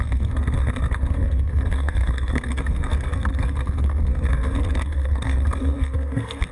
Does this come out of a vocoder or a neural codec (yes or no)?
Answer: yes